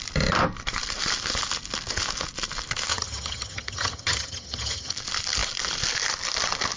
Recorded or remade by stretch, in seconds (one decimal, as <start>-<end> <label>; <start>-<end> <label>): 0.0-2.9 recorded; 2.9-4.9 remade; 4.9-6.8 recorded